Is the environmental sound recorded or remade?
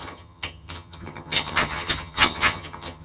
remade